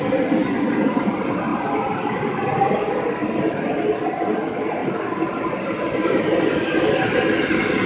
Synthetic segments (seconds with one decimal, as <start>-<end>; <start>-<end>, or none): 1.5-2.4; 3.2-3.8; 4.8-6.2